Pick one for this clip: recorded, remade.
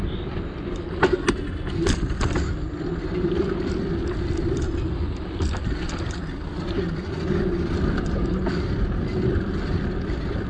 recorded